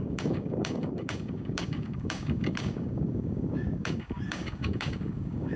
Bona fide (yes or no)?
no